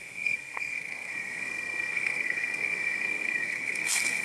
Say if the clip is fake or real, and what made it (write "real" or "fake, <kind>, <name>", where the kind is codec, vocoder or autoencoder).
fake, codec, SNAC